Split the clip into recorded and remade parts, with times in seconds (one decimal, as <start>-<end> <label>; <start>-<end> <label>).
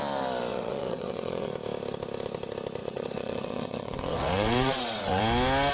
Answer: 0.0-0.5 recorded; 0.5-1.5 remade; 1.5-2.8 recorded; 2.8-5.2 remade; 5.2-5.7 recorded